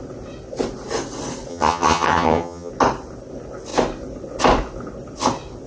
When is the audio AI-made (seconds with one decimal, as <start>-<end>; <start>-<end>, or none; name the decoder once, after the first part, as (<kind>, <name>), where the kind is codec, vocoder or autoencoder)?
1.5-2.7 (vocoder, HiFi-GAN)